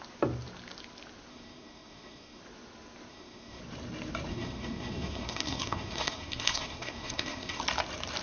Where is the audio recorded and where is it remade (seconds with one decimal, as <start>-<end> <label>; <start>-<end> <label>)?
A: 0.0-1.3 recorded; 1.3-2.4 remade; 2.4-3.1 recorded; 3.1-3.6 remade; 3.6-4.3 recorded; 4.3-7.6 remade; 7.6-8.2 recorded